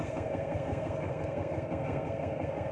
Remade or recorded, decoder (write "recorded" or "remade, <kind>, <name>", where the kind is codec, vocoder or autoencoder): remade, codec, SNAC